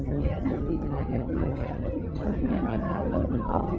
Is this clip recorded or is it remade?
remade